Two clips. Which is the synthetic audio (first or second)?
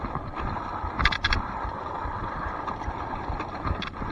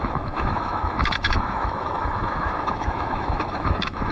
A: second